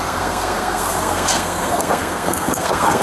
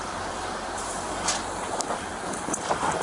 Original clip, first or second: second